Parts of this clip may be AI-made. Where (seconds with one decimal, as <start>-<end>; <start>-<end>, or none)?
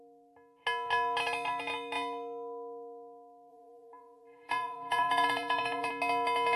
3.5-5.9